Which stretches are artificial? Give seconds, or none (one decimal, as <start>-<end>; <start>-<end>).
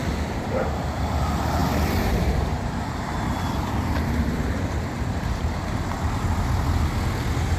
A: 0.0-0.6; 1.6-6.2